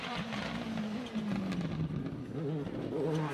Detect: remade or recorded recorded